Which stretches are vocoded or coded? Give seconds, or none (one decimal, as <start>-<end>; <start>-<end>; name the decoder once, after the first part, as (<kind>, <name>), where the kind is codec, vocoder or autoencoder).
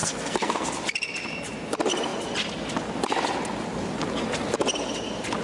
0.0-0.7 (codec, SNAC)